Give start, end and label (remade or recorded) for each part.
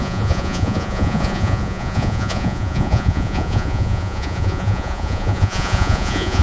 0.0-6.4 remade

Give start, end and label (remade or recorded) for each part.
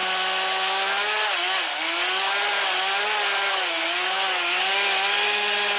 0.0-5.8 recorded